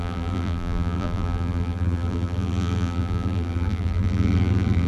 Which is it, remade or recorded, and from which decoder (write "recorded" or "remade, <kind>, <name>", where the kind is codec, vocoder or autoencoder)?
remade, vocoder, BigVGAN v2